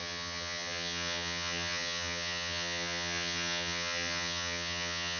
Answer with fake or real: fake